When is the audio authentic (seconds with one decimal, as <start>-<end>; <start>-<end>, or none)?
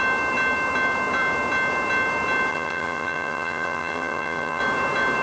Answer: 0.0-2.5; 4.6-5.2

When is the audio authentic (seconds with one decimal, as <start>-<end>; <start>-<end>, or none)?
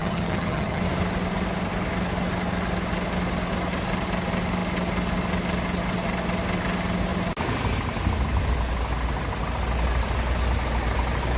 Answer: 0.8-11.4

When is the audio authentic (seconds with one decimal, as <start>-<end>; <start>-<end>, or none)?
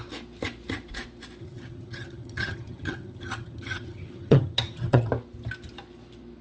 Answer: 0.0-1.4; 5.1-6.4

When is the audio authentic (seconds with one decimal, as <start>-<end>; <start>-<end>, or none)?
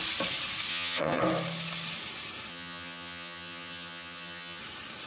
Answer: 0.0-0.7; 1.2-2.5; 4.6-5.1